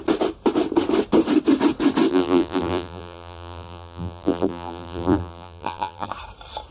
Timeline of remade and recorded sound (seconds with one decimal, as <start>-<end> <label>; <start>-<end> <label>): 0.0-2.1 recorded; 2.1-6.1 remade; 6.1-6.7 recorded